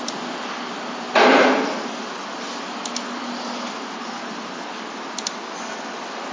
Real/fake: real